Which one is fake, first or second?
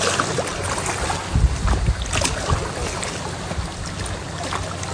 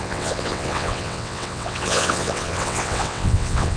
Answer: second